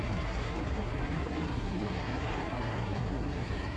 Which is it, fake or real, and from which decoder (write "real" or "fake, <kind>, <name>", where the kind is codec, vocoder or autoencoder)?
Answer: fake, codec, SNAC